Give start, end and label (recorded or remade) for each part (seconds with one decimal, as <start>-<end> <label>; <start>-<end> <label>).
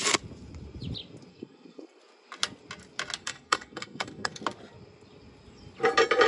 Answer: 0.0-1.3 recorded; 1.3-2.0 remade; 2.0-3.2 recorded; 3.2-4.4 remade; 4.4-6.3 recorded